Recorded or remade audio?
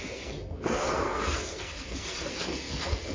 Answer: remade